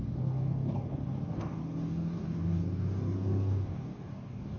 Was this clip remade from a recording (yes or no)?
yes